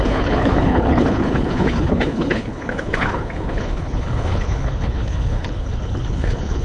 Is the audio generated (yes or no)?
yes